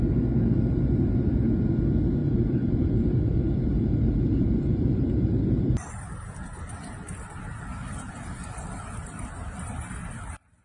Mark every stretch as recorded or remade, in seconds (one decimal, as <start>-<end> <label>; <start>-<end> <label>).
0.0-2.2 recorded; 2.2-5.9 remade; 5.9-10.6 recorded